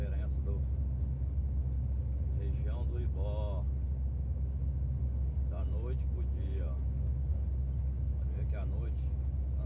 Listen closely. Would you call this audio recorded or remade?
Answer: recorded